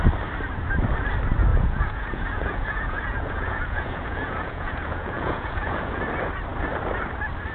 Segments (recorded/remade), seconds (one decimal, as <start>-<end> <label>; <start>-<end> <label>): 0.0-1.5 recorded; 1.5-6.0 remade; 6.0-7.5 recorded